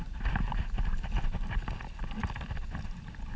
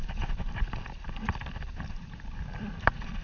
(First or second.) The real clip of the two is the first